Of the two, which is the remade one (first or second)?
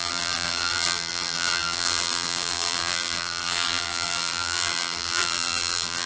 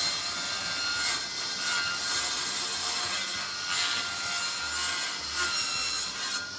first